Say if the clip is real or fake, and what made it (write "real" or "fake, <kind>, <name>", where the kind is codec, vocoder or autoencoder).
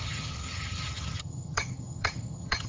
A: fake, vocoder, HiFi-GAN